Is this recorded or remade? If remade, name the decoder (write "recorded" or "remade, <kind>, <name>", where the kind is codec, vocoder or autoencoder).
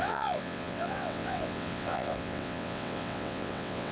remade, vocoder, WaveNeXt